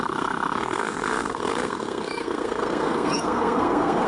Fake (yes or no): yes